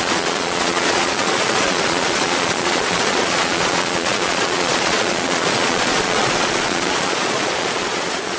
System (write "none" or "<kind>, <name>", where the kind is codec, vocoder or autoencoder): vocoder, Vocos